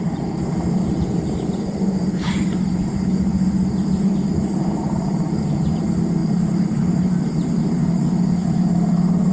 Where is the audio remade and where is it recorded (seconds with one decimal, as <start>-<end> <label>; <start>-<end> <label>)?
0.0-3.3 remade; 3.3-4.6 recorded; 4.6-9.3 remade